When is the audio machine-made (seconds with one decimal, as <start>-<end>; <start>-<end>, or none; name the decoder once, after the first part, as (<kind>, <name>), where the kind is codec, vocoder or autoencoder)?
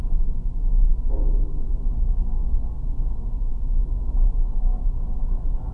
none